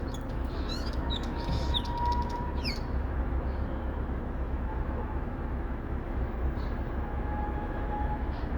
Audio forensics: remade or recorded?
remade